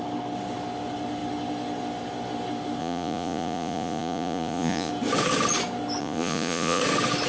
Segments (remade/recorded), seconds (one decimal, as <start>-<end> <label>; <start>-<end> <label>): 0.0-2.8 recorded; 2.8-4.9 remade; 4.9-6.0 recorded; 6.0-6.8 remade; 6.8-7.3 recorded